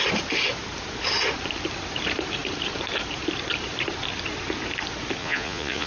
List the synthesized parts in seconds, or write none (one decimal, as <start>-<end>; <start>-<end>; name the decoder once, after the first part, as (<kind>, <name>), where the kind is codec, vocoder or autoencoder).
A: 5.2-5.9 (vocoder, Vocos)